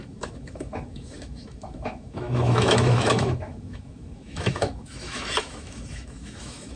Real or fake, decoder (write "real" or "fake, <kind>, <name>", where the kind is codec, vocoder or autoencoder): fake, autoencoder, DAC-VAE